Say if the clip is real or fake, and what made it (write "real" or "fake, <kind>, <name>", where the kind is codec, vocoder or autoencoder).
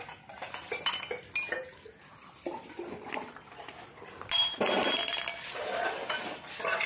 real